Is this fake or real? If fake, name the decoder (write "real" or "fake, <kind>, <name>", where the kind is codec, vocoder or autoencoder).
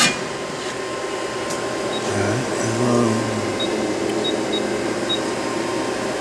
real